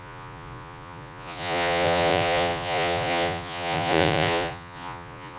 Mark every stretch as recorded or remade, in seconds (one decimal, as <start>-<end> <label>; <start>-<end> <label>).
0.0-5.4 remade

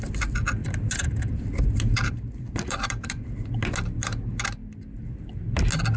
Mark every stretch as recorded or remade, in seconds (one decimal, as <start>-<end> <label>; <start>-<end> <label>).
0.0-0.6 recorded; 0.6-3.5 remade; 3.5-6.0 recorded